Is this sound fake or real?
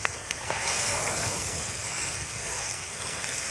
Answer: fake